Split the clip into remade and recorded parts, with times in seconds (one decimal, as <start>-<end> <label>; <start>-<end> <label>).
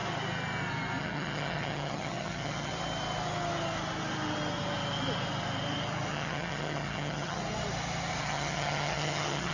0.0-1.0 recorded; 1.0-2.7 remade; 2.7-6.1 recorded; 6.1-7.4 remade; 7.4-8.2 recorded; 8.2-9.5 remade